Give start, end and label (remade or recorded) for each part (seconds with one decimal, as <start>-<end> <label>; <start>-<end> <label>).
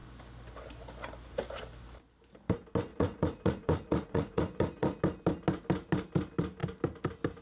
0.0-2.9 recorded; 2.9-5.0 remade; 5.0-7.4 recorded